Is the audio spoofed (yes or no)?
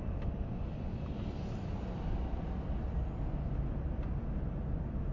yes